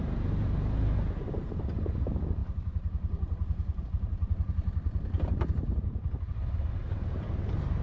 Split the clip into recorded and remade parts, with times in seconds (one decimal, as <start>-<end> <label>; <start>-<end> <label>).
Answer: 0.0-7.8 remade